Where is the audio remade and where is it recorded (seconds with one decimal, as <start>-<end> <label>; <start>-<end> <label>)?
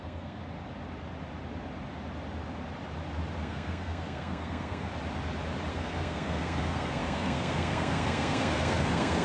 0.0-0.4 remade; 0.4-3.4 recorded; 3.4-4.9 remade; 4.9-5.7 recorded; 5.7-9.2 remade